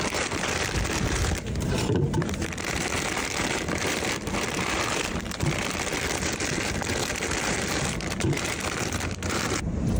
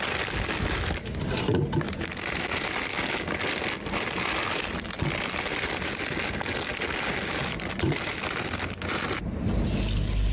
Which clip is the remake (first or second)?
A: first